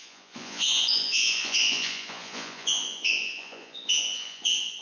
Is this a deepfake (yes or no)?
yes